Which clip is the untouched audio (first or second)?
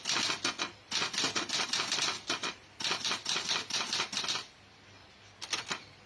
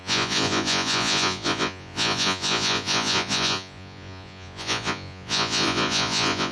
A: first